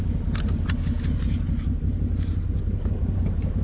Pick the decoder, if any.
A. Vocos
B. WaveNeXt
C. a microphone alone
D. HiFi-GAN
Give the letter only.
C